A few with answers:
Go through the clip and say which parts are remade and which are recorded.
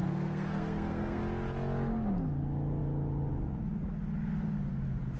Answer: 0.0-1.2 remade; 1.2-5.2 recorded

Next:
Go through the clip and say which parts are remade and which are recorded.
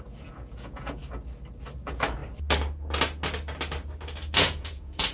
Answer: 0.0-1.0 remade; 1.0-1.6 recorded; 1.6-2.2 remade; 2.2-4.4 recorded; 4.4-5.1 remade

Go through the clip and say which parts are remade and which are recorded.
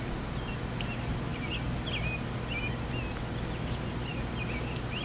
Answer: 0.0-5.0 recorded